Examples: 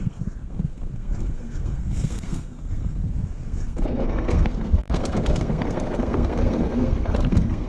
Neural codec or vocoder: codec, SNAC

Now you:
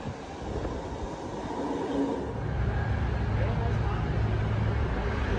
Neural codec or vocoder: none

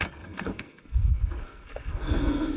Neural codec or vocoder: codec, SNAC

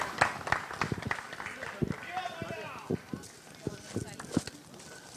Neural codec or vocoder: none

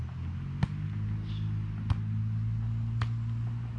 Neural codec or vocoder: none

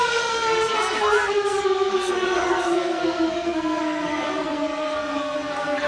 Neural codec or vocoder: codec, SNAC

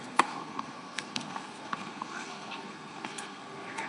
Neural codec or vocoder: codec, SNAC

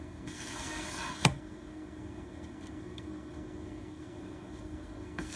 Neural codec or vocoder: codec, SNAC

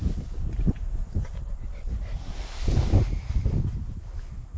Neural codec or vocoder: none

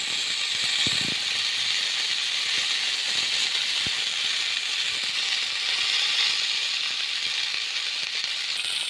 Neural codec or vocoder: none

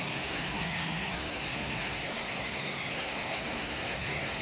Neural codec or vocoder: codec, SNAC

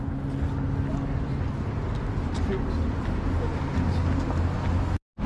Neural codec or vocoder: none